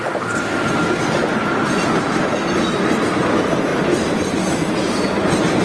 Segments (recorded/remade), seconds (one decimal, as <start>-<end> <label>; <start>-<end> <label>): 0.0-3.7 recorded; 3.7-4.9 remade; 4.9-5.6 recorded